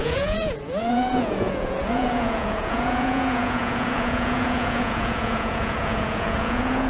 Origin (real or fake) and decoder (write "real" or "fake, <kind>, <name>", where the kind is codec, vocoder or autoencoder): fake, vocoder, Vocos